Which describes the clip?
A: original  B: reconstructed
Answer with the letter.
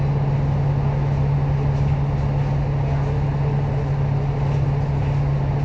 A